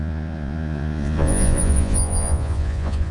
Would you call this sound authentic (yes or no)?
no